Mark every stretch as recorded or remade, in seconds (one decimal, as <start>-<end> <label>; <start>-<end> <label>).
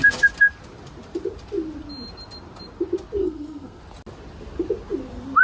0.0-3.2 recorded; 3.2-3.8 remade; 3.8-5.4 recorded